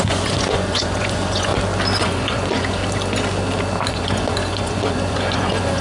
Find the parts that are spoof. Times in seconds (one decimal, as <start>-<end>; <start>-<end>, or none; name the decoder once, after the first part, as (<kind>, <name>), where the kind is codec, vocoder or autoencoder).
0.0-1.5 (vocoder, Vocos); 2.0-2.8; 3.9-5.8